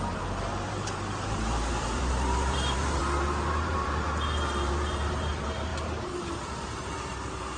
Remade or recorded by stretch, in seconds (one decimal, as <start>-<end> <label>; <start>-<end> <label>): 0.0-3.0 remade; 3.0-3.5 recorded; 3.5-7.6 remade